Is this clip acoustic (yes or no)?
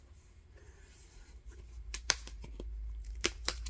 no